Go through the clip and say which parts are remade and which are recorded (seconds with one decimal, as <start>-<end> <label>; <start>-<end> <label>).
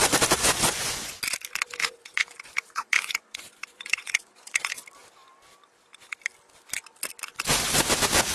0.0-1.2 remade; 1.2-1.8 recorded; 1.8-4.7 remade; 4.7-8.3 recorded